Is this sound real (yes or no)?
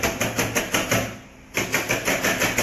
yes